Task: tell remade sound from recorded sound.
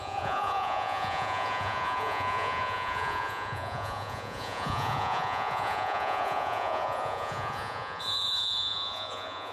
remade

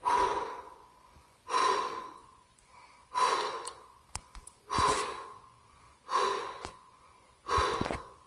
remade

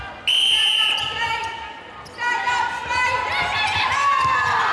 recorded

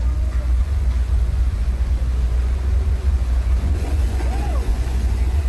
remade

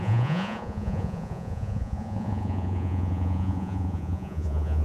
remade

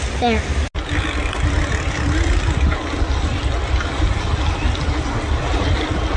recorded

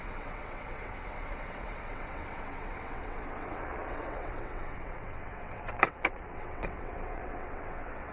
remade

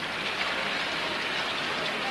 recorded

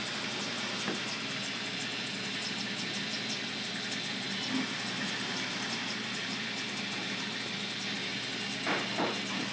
recorded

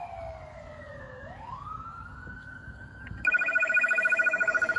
remade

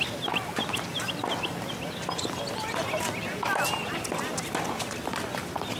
recorded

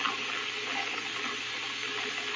recorded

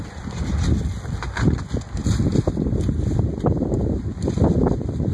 recorded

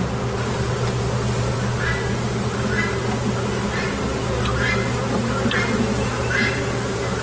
recorded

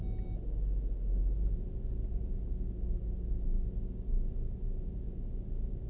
recorded